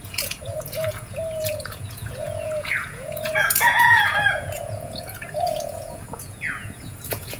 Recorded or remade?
remade